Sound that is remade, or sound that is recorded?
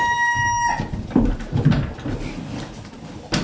recorded